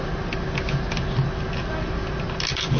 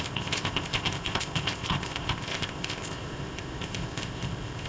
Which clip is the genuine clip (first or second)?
first